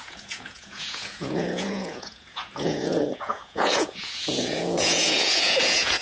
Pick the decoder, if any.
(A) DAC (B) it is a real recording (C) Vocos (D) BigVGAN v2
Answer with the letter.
C